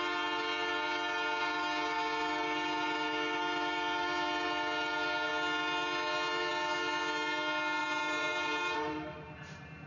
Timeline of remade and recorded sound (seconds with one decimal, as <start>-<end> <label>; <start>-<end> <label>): 0.0-7.8 recorded; 7.8-9.9 remade